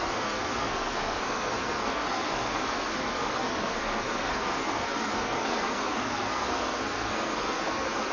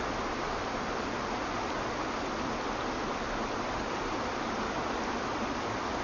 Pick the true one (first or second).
second